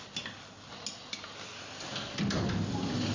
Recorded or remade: recorded